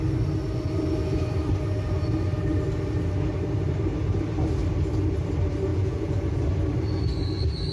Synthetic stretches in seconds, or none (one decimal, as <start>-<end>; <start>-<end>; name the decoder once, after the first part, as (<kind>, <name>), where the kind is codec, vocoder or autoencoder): 5.7-6.2 (vocoder, Vocos)